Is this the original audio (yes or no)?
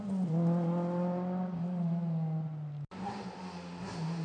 yes